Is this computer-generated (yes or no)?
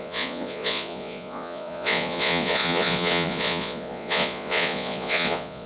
yes